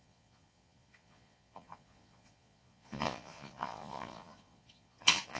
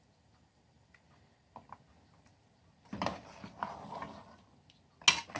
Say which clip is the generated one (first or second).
first